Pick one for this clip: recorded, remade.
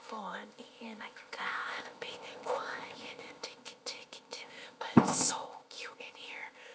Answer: remade